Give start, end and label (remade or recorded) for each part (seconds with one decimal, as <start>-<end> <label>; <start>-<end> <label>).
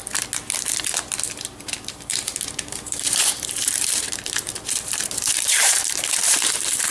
0.0-1.4 recorded; 1.4-6.9 remade